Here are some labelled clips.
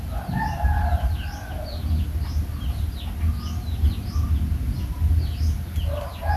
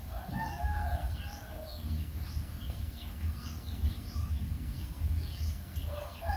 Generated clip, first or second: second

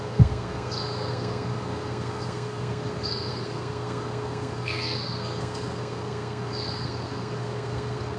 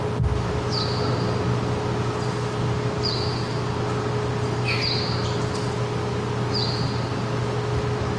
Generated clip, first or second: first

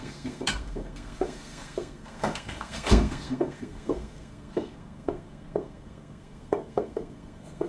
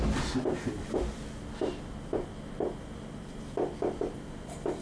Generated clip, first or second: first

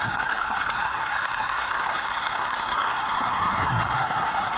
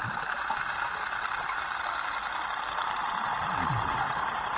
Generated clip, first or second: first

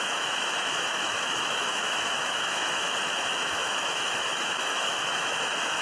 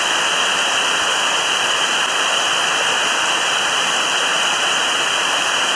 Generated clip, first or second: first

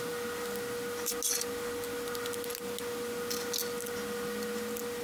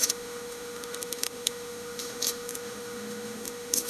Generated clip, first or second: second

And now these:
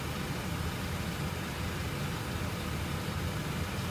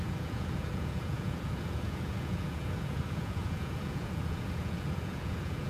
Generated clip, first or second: second